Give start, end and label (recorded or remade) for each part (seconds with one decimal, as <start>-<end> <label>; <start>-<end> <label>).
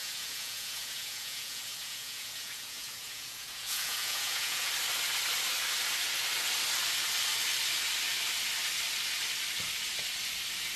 0.0-4.7 remade; 4.7-10.8 recorded